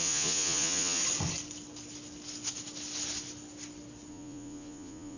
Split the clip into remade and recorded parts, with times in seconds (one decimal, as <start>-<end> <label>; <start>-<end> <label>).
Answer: 0.0-1.0 remade; 1.0-4.1 recorded; 4.1-5.2 remade